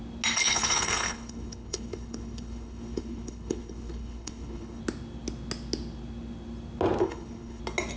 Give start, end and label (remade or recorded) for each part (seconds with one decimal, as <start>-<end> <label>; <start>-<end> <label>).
0.0-0.4 recorded; 0.4-4.8 remade; 4.8-7.0 recorded; 7.0-7.6 remade; 7.6-8.0 recorded